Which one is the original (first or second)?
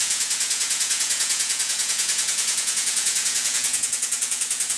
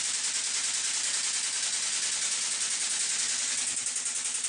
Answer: second